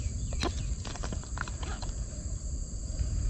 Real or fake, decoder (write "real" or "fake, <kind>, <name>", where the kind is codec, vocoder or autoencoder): fake, vocoder, BigVGAN v2